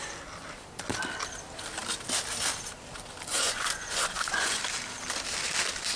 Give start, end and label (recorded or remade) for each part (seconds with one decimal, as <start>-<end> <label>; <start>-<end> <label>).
0.0-3.3 recorded; 3.3-4.6 remade; 4.6-6.0 recorded